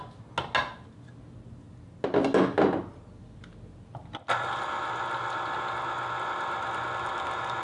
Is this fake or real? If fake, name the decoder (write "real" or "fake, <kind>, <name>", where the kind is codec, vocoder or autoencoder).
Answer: real